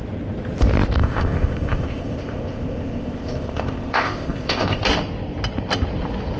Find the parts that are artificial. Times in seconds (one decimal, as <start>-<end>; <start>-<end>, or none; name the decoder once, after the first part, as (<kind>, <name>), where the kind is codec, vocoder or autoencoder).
1.0-4.8 (codec, ZipCodec)